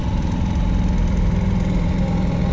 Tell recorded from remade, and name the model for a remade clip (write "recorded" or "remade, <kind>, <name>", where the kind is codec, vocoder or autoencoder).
recorded